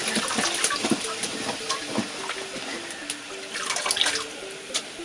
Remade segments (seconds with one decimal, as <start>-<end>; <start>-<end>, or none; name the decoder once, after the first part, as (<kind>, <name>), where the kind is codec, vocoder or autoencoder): none